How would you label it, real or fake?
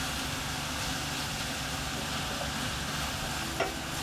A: real